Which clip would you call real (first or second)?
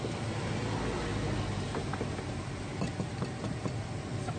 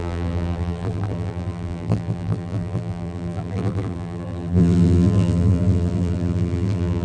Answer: first